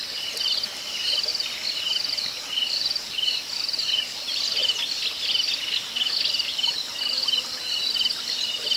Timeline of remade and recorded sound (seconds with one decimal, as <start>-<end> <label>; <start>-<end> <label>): 0.0-1.3 remade; 1.3-2.1 recorded; 2.1-4.6 remade; 4.6-6.3 recorded; 6.3-8.8 remade